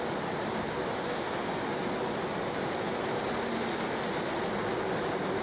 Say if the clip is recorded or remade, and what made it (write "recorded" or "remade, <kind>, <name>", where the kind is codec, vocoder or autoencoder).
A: recorded